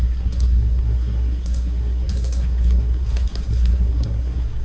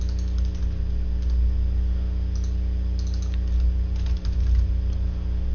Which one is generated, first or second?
first